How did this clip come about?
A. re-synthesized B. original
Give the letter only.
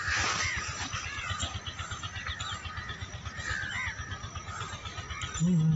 B